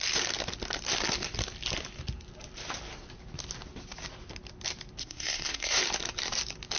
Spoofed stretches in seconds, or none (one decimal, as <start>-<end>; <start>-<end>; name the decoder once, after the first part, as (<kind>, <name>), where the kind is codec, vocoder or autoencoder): 5.0-5.8 (codec, SNAC)